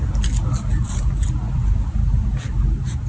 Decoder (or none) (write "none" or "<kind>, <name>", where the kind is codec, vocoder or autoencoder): none